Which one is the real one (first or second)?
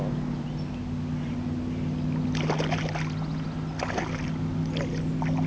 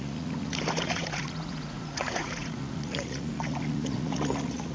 first